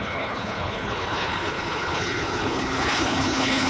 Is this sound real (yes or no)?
no